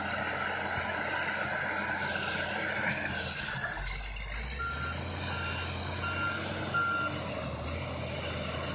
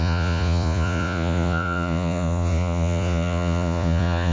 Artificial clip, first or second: second